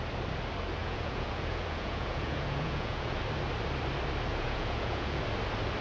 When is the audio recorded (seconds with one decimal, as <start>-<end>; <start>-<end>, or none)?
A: 0.0-0.8; 3.2-4.3; 5.2-5.8